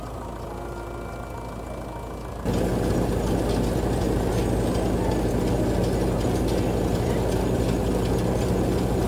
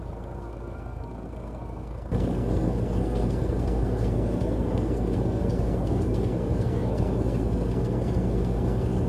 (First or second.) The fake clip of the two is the second